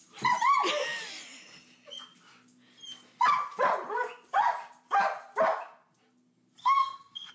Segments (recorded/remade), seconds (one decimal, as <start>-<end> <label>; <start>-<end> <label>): 0.0-6.6 recorded; 6.6-7.3 remade